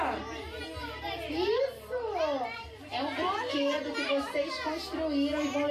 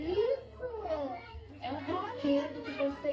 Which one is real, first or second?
first